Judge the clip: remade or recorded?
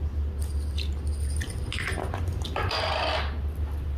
recorded